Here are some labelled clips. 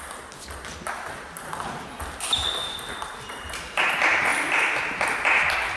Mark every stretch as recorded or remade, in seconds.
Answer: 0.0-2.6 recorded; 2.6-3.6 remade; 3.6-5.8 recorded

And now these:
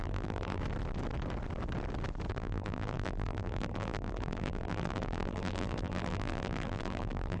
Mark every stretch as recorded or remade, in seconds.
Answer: 0.0-0.6 remade; 0.6-2.3 recorded; 2.3-7.4 remade